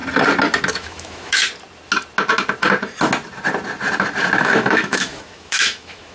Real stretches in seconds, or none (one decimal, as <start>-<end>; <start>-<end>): 0.0-0.7; 1.4-4.4